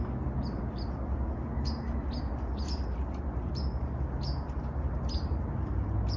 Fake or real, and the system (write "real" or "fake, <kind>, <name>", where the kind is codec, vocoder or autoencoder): real